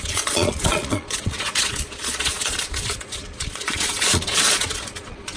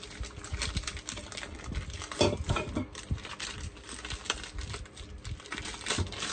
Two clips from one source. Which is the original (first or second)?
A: second